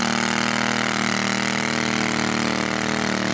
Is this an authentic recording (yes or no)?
yes